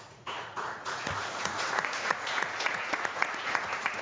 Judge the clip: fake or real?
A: fake